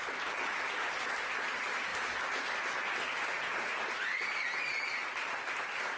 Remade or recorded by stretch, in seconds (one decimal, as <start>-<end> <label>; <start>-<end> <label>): 0.0-6.0 recorded

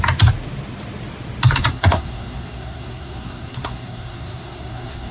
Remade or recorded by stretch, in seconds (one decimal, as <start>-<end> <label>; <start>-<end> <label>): 0.0-1.7 recorded; 1.7-5.1 remade

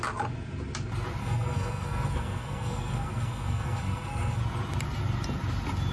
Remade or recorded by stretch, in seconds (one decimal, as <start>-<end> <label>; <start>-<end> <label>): 0.0-1.2 recorded; 1.2-4.4 remade; 4.4-5.9 recorded

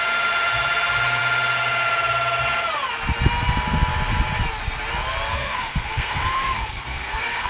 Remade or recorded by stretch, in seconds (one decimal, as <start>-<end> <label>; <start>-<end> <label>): 0.0-5.3 recorded; 5.3-7.5 remade

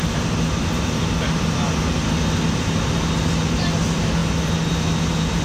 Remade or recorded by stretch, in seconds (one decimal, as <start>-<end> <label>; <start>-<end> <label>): 0.0-5.4 recorded